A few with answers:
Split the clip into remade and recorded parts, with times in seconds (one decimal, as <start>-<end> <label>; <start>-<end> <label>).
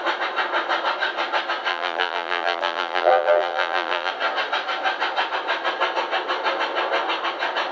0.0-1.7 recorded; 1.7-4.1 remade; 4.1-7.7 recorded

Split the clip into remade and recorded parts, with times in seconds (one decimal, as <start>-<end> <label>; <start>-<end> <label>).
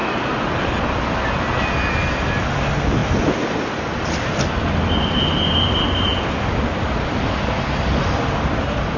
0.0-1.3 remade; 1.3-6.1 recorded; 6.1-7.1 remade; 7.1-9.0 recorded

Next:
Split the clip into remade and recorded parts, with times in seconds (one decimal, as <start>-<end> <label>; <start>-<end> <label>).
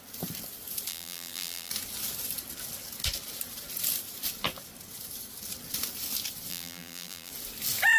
0.0-0.9 recorded; 0.9-1.7 remade; 1.7-6.5 recorded; 6.5-7.3 remade; 7.3-8.0 recorded